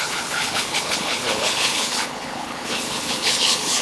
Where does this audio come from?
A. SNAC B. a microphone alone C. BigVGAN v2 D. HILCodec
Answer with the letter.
D